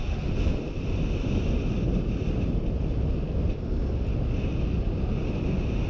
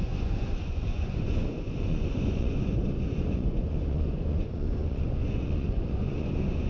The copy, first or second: second